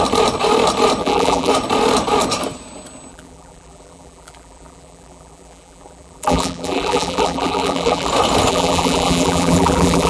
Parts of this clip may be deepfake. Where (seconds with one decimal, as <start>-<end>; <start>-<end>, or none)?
1.0-1.5; 3.1-8.1; 8.5-10.1